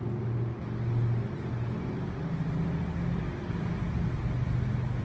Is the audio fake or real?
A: real